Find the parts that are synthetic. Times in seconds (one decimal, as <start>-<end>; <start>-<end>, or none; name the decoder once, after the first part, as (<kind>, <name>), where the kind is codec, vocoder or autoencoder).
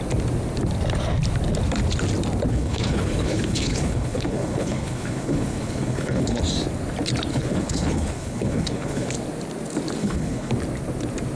2.5-6.4 (codec, HILCodec); 7.3-9.1; 10.0-10.5